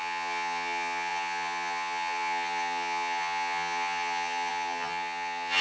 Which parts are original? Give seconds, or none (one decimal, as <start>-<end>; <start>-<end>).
none